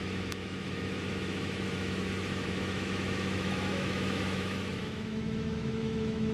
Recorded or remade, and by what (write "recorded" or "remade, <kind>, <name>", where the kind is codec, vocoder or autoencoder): remade, autoencoder, DAC-VAE